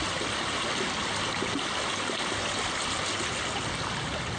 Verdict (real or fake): real